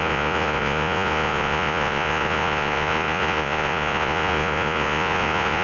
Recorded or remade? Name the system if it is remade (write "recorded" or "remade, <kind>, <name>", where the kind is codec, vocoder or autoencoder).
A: remade, vocoder, Vocos